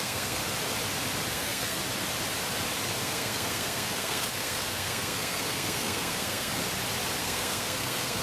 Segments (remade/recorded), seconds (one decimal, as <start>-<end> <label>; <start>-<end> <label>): 0.0-0.4 remade; 0.4-1.3 recorded; 1.3-1.8 remade; 1.8-3.0 recorded; 3.0-6.6 remade; 6.6-7.2 recorded; 7.2-8.2 remade